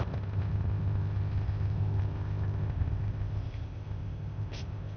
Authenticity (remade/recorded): remade